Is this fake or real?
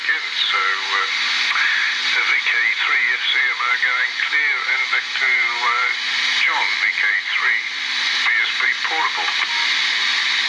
real